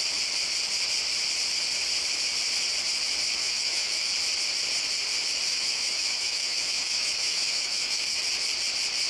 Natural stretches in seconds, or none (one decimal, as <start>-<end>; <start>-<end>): 0.0-3.4; 4.1-5.5; 8.2-9.1